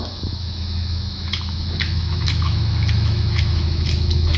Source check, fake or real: fake